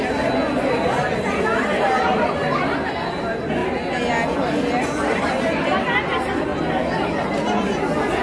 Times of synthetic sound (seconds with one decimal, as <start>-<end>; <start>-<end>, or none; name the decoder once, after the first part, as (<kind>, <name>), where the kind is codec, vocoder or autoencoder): none